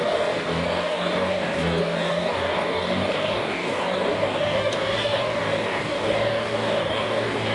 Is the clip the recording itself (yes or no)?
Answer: no